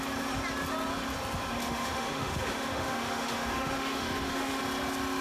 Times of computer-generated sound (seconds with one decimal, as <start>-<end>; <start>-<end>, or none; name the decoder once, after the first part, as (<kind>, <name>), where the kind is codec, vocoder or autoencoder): 1.6-4.6 (autoencoder, DAC-VAE)